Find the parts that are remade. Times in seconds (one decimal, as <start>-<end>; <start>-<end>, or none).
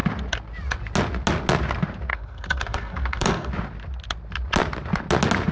2.1-3.5